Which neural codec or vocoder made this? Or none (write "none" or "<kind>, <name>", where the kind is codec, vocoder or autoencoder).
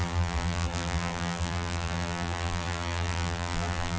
vocoder, BigVGAN v2